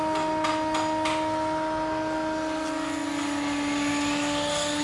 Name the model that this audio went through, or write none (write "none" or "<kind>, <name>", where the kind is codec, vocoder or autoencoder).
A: none